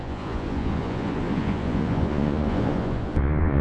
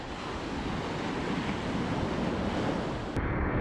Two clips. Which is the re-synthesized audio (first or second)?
first